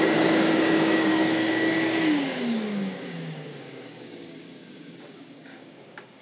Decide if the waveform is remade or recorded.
remade